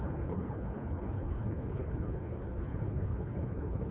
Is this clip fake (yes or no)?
yes